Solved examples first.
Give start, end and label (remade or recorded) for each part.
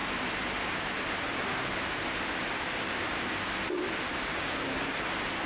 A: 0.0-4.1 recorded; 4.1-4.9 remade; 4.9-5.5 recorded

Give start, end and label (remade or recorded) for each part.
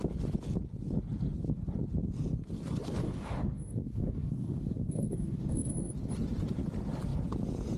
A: 0.0-3.0 recorded; 3.0-5.9 remade; 5.9-7.8 recorded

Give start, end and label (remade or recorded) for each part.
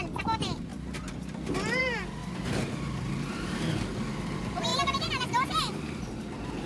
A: 0.0-0.7 remade; 0.7-1.8 recorded; 1.8-6.7 remade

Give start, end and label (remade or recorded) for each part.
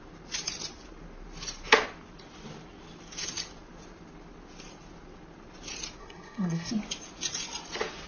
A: 0.0-6.0 recorded; 6.0-6.7 remade; 6.7-8.1 recorded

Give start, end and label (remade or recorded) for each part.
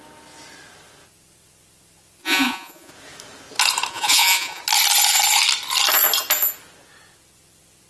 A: 0.0-2.2 recorded; 2.2-2.9 remade; 2.9-3.9 recorded; 3.9-4.6 remade; 4.6-7.9 recorded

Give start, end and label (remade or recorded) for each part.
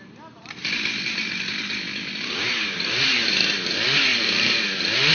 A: 0.0-0.4 recorded; 0.4-2.9 remade; 2.9-4.1 recorded; 4.1-5.1 remade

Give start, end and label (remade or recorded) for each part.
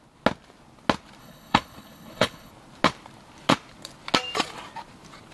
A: 0.0-1.2 recorded; 1.2-2.5 remade; 2.5-5.3 recorded